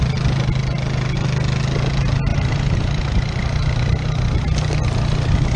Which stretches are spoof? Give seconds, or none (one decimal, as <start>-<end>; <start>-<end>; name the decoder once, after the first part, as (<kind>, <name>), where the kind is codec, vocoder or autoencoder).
2.3-3.9 (vocoder, BigVGAN v2)